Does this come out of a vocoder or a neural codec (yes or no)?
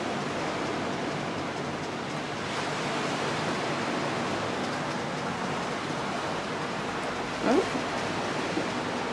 no